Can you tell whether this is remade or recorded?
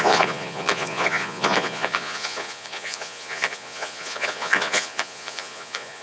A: remade